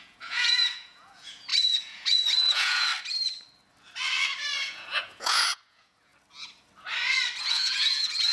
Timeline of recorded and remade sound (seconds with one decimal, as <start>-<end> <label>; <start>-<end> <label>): 0.0-2.9 remade; 2.9-4.6 recorded; 4.6-6.1 remade; 6.1-7.4 recorded; 7.4-8.3 remade